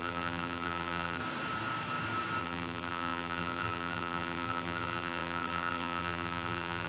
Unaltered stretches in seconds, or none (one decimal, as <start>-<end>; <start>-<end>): 1.2-2.4